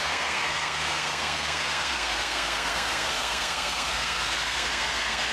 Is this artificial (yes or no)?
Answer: yes